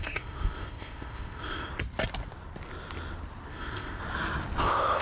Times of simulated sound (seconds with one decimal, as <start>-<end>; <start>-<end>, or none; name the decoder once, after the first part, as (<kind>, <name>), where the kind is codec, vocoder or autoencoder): 0.0-1.7 (codec, ZipCodec); 3.5-4.0; 4.6-5.0